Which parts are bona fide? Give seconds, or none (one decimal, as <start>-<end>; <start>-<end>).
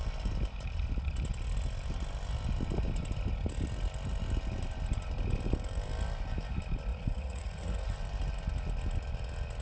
0.0-6.9; 8.0-9.6